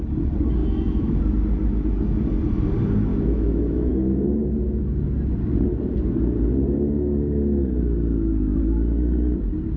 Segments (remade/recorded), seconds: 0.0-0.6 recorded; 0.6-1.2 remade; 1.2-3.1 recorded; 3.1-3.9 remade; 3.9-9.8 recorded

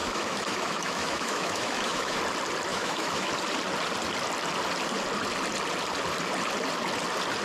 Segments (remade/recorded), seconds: 0.0-2.2 remade; 2.2-2.7 recorded; 2.7-3.3 remade; 3.3-7.4 recorded

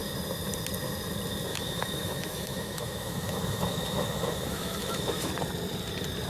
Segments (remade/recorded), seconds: 0.0-1.5 recorded; 1.5-5.3 remade; 5.3-6.3 recorded